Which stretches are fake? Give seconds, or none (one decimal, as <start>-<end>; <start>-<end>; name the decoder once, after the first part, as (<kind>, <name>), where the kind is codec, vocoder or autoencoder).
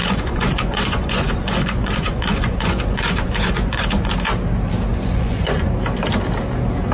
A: 0.0-4.1 (vocoder, Vocos); 4.9-5.7